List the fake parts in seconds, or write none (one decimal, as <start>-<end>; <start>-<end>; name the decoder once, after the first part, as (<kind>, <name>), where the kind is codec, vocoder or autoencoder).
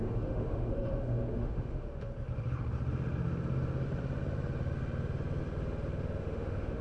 0.0-2.1 (autoencoder, DAC-VAE); 6.2-6.8